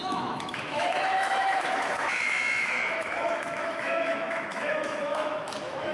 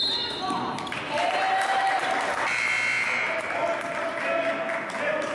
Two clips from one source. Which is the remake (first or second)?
first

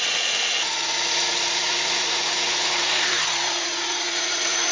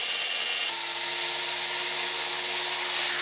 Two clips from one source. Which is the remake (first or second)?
first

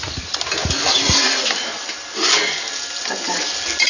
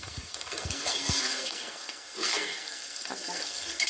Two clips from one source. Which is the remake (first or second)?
second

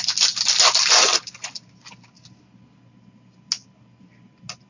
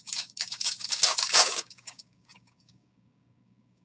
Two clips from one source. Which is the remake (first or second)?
second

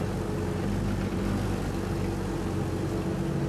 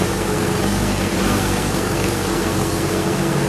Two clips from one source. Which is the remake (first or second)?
second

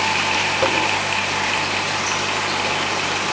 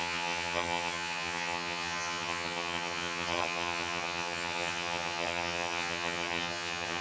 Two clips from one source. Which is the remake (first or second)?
second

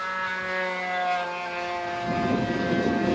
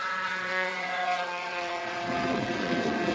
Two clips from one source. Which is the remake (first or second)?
second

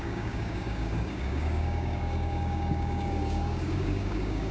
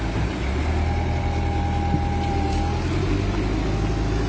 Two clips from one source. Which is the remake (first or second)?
first